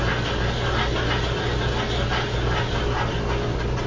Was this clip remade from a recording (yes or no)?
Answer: no